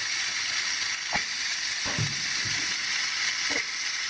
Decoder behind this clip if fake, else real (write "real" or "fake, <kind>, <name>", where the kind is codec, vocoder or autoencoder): real